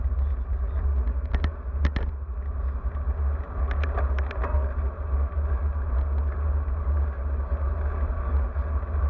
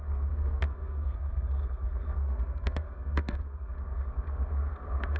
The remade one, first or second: second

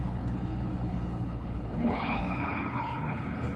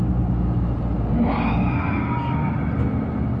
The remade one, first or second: first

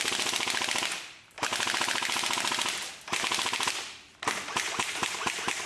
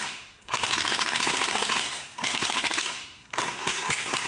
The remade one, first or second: second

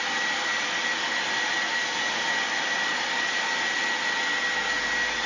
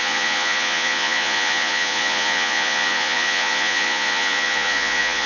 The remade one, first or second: second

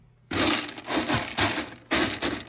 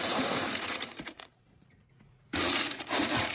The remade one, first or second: second